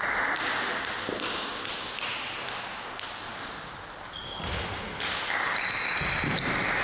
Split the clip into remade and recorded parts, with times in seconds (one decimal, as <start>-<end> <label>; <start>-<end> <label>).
0.0-6.8 recorded